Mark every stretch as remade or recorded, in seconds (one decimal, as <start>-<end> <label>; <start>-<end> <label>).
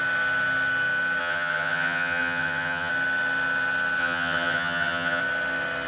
0.0-1.2 recorded; 1.2-2.9 remade; 2.9-4.0 recorded; 4.0-5.2 remade; 5.2-5.9 recorded